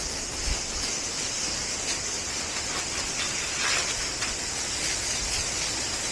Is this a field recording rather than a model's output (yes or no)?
yes